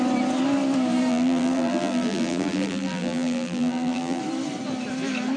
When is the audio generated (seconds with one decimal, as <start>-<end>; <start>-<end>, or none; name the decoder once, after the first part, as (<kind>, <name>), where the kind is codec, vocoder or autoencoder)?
1.1-4.2 (vocoder, BigVGAN v2)